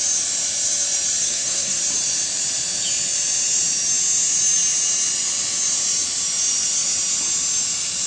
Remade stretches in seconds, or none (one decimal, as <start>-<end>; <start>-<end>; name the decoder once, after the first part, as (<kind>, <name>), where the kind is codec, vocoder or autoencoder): 1.2-1.8 (codec, SNAC)